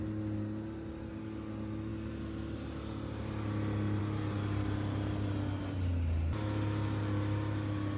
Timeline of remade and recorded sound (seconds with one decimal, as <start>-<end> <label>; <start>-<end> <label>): 0.0-8.0 recorded